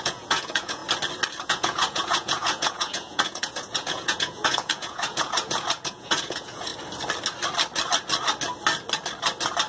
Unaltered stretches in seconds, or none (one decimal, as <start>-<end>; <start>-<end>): 0.8-1.4; 6.7-9.7